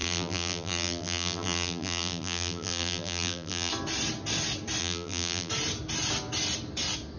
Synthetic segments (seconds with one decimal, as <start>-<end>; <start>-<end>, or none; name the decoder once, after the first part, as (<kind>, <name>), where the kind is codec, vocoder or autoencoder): 0.0-3.7 (vocoder, BigVGAN v2); 4.8-5.5